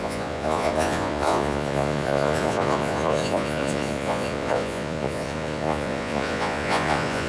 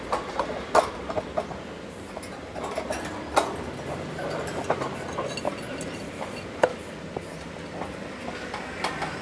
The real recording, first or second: second